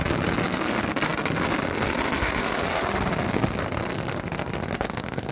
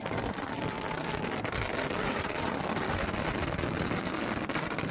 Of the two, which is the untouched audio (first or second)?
first